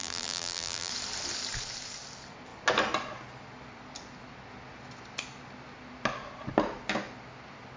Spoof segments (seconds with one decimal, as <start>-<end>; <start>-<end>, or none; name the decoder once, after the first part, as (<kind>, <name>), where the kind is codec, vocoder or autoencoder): 0.0-0.9 (vocoder, BigVGAN v2)